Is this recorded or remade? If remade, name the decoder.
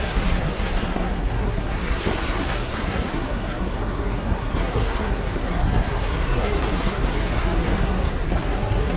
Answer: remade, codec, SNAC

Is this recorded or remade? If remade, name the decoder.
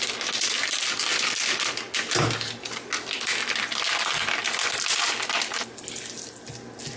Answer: recorded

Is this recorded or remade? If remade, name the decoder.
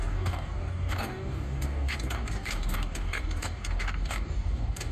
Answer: remade, codec, DAC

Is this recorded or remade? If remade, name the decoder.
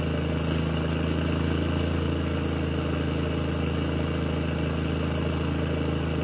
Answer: recorded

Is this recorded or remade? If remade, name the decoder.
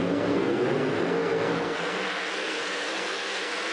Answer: remade, codec, SNAC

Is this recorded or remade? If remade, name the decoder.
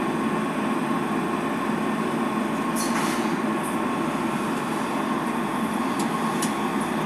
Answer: recorded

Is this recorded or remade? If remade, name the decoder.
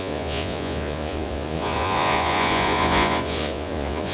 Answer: remade, vocoder, Vocos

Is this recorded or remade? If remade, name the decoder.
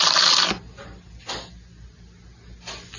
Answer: recorded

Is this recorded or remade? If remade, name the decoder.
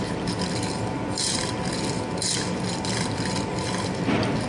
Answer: recorded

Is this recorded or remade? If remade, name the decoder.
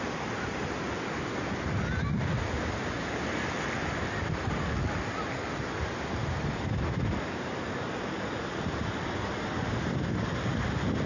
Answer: recorded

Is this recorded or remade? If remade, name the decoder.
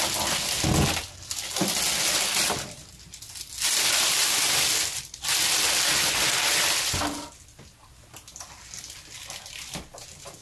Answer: recorded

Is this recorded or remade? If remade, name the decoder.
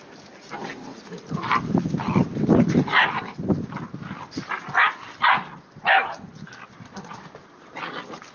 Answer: recorded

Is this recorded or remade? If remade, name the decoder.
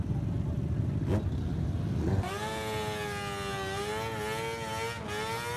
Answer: recorded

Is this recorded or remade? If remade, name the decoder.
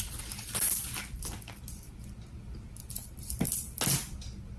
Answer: remade, vocoder, BigVGAN v2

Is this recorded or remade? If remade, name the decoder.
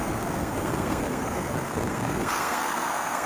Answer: remade, codec, SNAC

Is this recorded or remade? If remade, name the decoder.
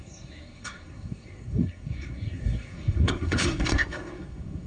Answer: remade, codec, SNAC